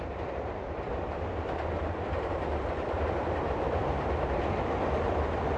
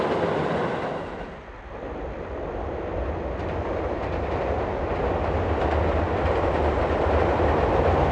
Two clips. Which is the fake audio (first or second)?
first